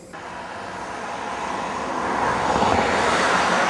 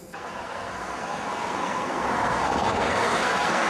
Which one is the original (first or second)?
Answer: first